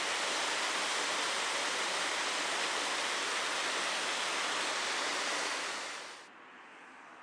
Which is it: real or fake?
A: real